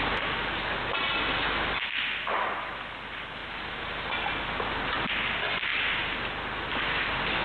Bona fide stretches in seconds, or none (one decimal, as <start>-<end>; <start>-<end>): 0.0-3.4; 4.4-7.4

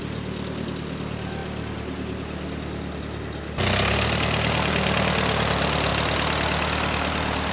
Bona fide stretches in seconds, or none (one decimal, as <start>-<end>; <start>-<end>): 0.0-7.5

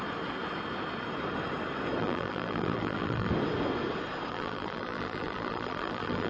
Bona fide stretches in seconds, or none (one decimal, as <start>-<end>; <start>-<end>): 0.0-2.0; 3.3-4.3

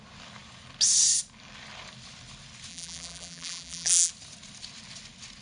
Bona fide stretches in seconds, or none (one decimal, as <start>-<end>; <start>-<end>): 0.0-2.7; 4.1-5.4